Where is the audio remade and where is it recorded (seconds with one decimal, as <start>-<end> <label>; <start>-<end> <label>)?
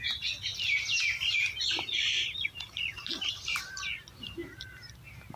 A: 0.0-2.9 recorded; 2.9-3.7 remade; 3.7-4.4 recorded; 4.4-5.4 remade